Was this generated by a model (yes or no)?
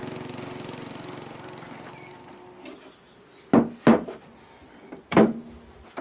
no